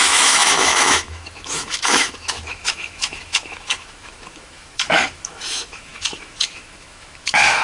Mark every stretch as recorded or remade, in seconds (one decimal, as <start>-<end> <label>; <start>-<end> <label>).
0.0-7.6 remade